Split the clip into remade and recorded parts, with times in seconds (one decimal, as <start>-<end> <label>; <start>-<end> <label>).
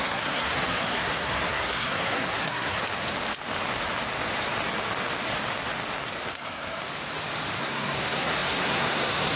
0.0-2.8 remade; 2.8-6.3 recorded; 6.3-6.8 remade; 6.8-7.6 recorded; 7.6-9.4 remade